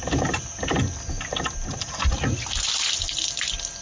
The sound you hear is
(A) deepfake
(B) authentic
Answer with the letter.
B